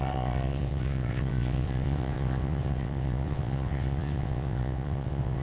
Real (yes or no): no